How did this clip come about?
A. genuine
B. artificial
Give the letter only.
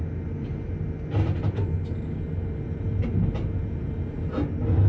A